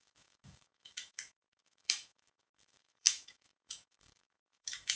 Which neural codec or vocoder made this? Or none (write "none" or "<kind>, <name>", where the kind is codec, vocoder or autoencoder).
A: autoencoder, DAC-VAE